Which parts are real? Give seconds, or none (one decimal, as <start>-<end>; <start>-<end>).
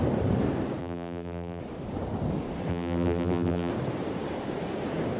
0.0-0.8; 1.6-2.7; 3.7-5.2